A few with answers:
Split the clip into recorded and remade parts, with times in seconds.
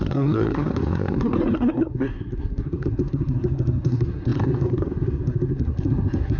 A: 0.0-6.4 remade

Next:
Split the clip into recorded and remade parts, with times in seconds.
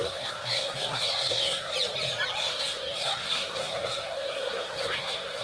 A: 0.0-1.7 remade; 1.7-2.4 recorded; 2.4-5.4 remade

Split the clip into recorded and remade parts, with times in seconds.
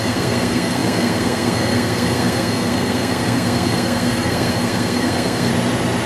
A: 0.0-5.5 remade; 5.5-6.1 recorded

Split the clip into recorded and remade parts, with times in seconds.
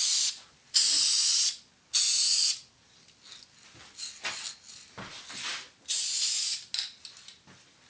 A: 0.0-7.9 recorded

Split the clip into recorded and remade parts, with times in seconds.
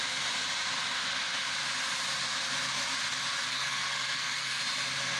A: 0.0-3.5 recorded; 3.5-4.6 remade; 4.6-5.2 recorded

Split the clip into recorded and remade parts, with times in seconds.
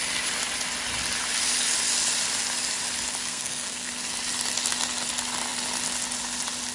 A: 0.0-3.2 recorded; 3.2-3.9 remade; 3.9-6.7 recorded